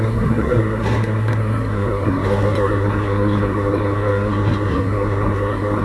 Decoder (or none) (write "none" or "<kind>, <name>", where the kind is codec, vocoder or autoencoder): codec, SNAC